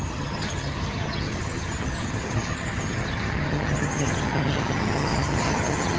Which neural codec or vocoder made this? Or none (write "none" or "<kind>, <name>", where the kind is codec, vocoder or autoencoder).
vocoder, HiFi-GAN